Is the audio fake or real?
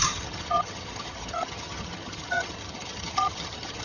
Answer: fake